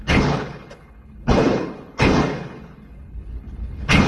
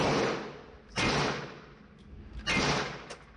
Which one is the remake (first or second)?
first